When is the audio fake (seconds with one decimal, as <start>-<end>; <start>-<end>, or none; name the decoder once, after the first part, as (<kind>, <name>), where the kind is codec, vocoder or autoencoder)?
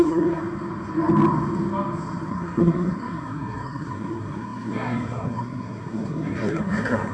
0.0-0.4 (codec, SNAC); 2.3-7.1